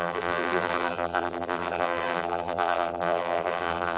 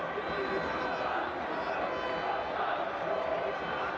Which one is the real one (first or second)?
second